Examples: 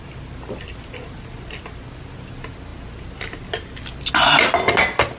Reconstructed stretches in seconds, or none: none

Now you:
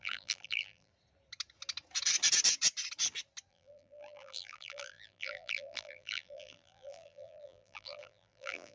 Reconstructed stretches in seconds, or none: 0.0-0.9; 3.5-8.7

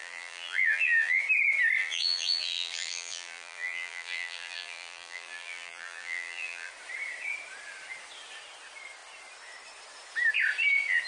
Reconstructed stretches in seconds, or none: 0.0-1.2; 1.8-6.7

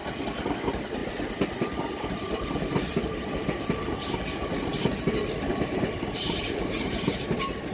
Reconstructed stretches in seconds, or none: 0.6-1.0; 4.8-7.7

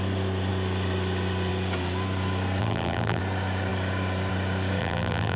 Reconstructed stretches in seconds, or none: 2.6-3.2; 4.8-5.4

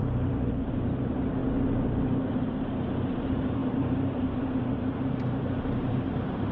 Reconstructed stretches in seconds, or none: 0.5-1.4; 2.3-6.5

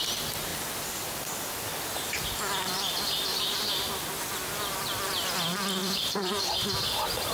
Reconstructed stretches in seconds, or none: 5.8-6.4

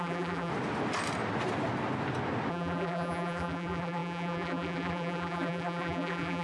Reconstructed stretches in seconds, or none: 0.0-0.5; 2.5-6.4